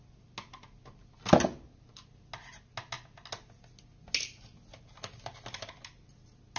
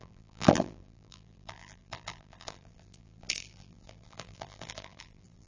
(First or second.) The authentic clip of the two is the first